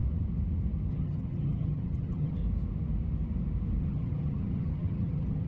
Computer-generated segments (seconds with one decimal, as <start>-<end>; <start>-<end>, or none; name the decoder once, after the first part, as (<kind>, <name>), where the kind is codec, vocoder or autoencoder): 0.9-2.4 (vocoder, HiFi-GAN); 3.8-5.5